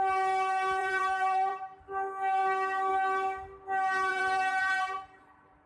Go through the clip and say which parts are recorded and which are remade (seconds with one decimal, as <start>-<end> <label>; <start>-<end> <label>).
0.0-0.8 recorded; 0.8-1.6 remade; 1.6-4.1 recorded; 4.1-5.7 remade